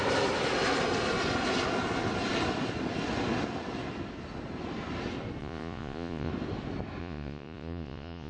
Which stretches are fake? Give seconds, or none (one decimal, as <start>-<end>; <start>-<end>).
5.4-6.3; 7.0-8.3